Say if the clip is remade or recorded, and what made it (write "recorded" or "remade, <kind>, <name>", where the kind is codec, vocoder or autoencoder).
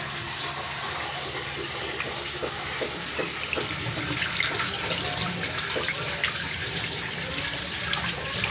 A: recorded